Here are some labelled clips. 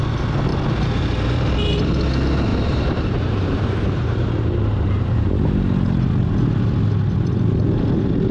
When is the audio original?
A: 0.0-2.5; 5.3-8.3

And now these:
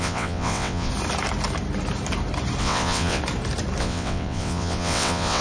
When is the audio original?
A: 0.9-2.6; 3.2-3.8

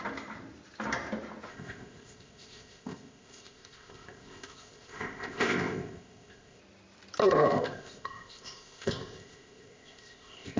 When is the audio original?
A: 0.0-1.5; 6.6-7.2

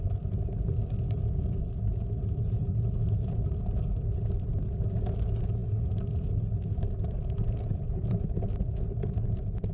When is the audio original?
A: 0.0-9.7